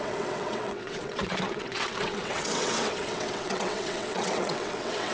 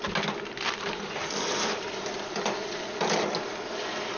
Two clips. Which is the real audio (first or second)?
second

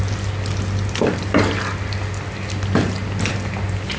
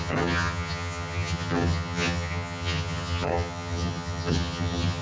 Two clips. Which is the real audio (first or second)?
first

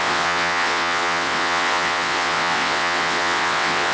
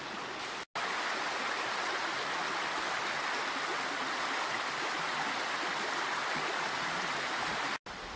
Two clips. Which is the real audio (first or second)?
second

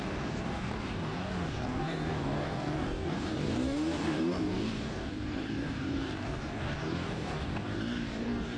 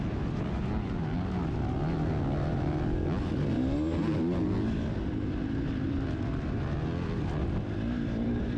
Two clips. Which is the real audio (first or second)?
second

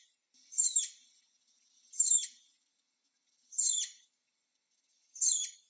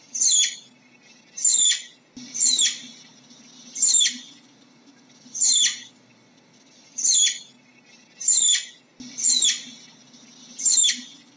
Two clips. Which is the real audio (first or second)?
second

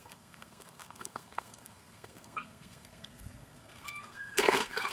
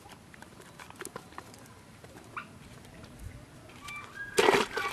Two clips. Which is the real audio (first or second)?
second